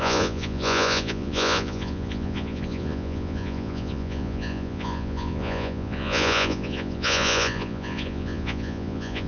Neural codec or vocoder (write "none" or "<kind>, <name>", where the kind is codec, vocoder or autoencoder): vocoder, Vocos